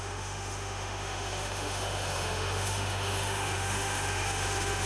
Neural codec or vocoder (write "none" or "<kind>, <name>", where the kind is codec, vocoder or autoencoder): autoencoder, DAC-VAE